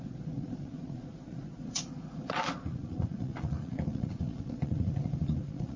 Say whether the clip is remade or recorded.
remade